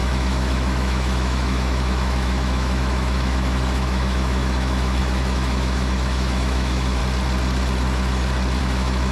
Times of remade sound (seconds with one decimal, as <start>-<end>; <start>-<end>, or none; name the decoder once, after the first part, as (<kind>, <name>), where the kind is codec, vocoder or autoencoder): 0.0-7.0 (autoencoder, DAC-VAE); 8.6-9.1